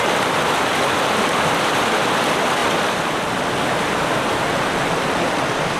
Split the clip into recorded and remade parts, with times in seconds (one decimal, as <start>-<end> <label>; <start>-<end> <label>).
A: 0.0-2.6 remade; 2.6-5.0 recorded; 5.0-5.8 remade